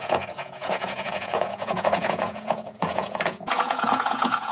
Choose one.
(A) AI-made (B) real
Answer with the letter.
A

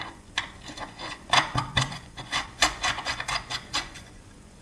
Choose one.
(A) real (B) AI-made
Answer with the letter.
B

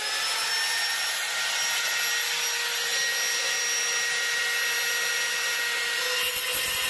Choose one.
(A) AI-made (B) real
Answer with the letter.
B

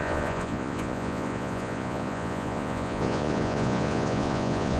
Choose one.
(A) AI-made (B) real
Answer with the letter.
A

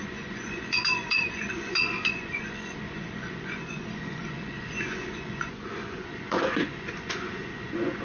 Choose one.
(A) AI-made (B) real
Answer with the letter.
A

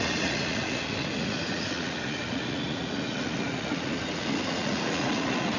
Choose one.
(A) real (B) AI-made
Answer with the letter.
B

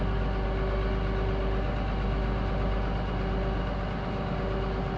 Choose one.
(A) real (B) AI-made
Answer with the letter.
A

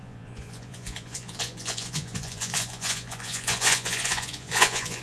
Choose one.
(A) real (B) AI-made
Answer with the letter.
B